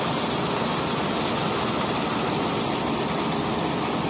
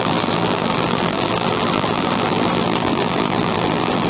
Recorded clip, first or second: first